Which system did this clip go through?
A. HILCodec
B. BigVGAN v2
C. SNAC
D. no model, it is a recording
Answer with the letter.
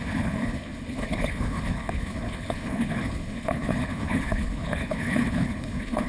A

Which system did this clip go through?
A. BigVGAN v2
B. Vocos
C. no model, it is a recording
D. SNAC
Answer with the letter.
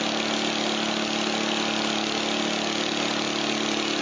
C